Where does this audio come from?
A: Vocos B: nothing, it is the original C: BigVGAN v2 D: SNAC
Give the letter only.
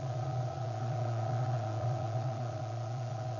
A